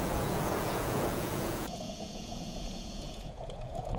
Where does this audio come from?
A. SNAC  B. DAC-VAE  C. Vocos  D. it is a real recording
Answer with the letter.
C